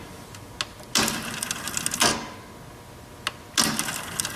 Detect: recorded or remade recorded